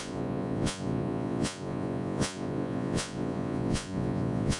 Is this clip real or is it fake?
fake